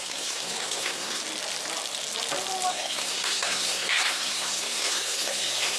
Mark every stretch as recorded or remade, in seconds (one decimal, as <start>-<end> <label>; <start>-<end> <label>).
0.0-1.2 remade; 1.2-2.7 recorded; 2.7-5.8 remade